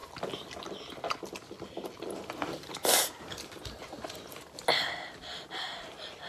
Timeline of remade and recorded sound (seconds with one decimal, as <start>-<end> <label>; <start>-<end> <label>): 0.0-6.3 recorded